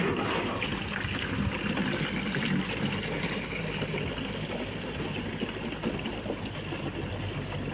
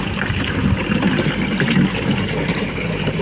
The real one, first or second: first